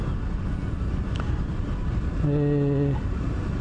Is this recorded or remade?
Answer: recorded